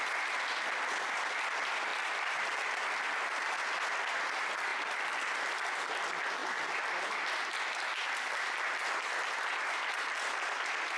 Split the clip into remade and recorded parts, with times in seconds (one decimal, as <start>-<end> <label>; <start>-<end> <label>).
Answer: 0.0-1.9 recorded; 1.9-3.6 remade; 3.6-4.7 recorded; 4.7-5.4 remade; 5.4-11.0 recorded